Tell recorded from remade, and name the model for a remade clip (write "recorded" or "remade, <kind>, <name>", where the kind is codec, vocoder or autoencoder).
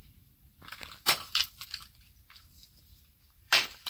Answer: remade, vocoder, BigVGAN v2